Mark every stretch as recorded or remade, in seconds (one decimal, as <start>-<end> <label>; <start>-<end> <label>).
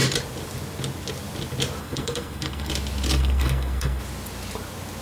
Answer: 0.0-1.8 recorded; 1.8-2.7 remade; 2.7-3.2 recorded; 3.2-4.0 remade; 4.0-5.0 recorded